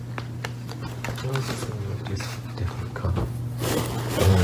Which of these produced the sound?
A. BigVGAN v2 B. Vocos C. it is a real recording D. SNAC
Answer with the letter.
C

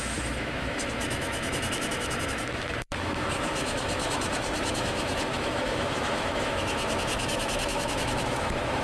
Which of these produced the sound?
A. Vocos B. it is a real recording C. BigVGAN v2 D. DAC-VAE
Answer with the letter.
D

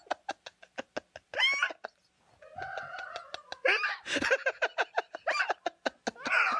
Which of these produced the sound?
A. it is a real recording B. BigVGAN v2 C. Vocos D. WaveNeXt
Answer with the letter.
A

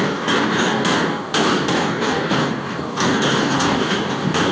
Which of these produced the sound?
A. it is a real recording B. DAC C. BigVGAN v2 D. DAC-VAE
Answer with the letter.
B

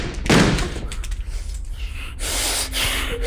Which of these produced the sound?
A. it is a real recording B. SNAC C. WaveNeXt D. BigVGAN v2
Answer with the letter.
A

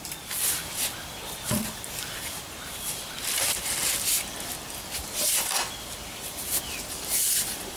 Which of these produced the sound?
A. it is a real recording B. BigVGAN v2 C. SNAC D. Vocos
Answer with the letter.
B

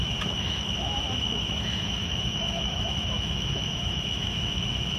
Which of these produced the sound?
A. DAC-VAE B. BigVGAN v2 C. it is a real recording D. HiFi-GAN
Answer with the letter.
A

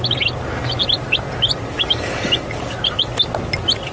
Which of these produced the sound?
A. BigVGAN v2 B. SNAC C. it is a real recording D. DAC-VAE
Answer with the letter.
C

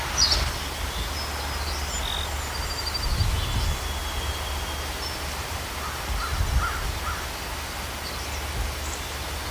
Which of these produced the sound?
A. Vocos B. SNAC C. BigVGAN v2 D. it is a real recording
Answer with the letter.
D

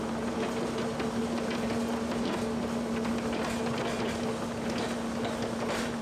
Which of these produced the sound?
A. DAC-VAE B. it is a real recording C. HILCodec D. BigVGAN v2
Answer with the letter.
B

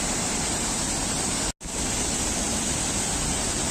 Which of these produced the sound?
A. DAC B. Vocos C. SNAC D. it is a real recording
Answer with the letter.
D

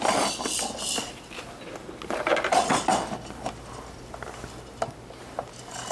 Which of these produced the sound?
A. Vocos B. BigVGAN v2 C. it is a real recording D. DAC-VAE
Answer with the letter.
C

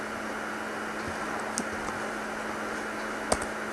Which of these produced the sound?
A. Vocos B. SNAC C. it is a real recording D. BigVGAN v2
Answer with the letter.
C